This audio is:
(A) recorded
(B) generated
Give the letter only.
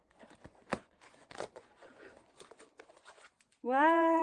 B